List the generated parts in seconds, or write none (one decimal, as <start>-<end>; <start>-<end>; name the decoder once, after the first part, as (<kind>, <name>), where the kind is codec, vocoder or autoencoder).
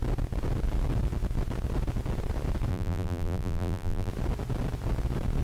2.7-4.1 (vocoder, BigVGAN v2)